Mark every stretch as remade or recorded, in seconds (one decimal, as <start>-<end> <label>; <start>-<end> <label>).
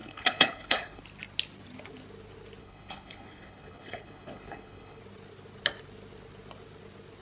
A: 0.0-1.0 remade; 1.0-2.6 recorded; 2.6-5.0 remade; 5.0-7.2 recorded